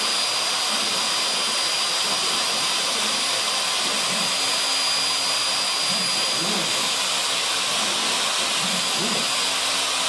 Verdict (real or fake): real